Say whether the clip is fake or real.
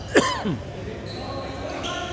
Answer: real